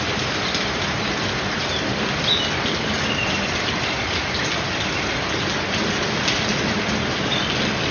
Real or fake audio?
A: real